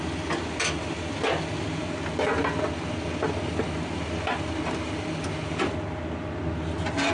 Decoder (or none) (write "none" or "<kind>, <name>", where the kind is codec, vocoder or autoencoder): none